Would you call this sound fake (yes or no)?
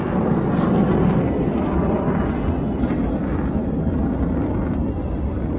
no